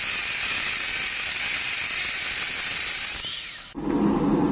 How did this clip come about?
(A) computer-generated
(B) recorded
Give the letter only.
B